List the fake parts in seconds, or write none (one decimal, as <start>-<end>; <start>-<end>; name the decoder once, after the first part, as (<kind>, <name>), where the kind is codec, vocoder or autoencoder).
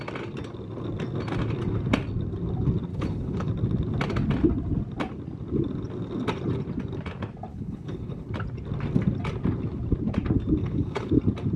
2.9-3.5 (codec, HILCodec); 7.5-8.3; 10.6-11.1